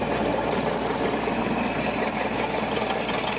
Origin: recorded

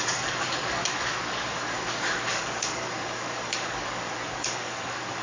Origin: remade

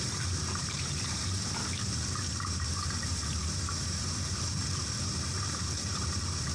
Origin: remade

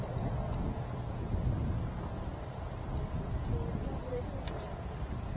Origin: recorded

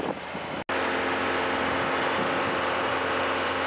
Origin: recorded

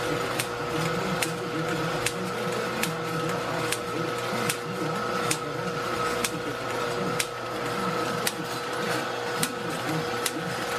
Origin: recorded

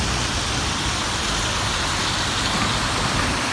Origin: recorded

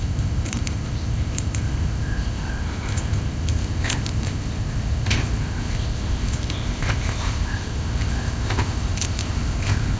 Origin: remade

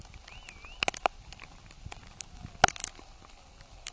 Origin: recorded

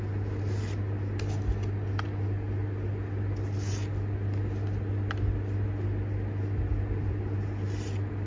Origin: recorded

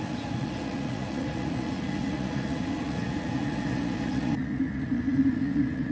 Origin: remade